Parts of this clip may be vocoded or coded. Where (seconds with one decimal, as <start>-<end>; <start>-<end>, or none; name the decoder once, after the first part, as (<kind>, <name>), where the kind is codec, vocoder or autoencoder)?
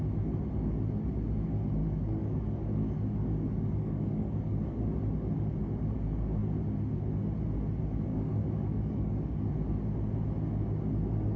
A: 1.8-4.8 (codec, DAC); 8.1-9.5